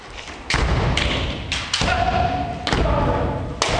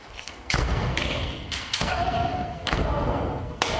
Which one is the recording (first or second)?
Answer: first